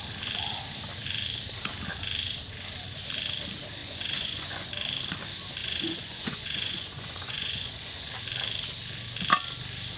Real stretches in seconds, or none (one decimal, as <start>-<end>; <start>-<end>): 0.0-3.8; 4.7-5.6; 8.1-10.0